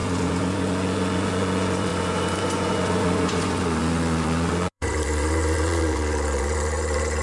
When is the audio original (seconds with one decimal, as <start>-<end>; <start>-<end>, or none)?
1.9-2.4